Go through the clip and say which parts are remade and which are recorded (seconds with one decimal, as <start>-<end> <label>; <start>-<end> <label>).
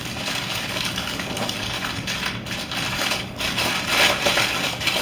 0.0-2.2 remade; 2.2-2.9 recorded; 2.9-3.7 remade; 3.7-4.4 recorded; 4.4-5.0 remade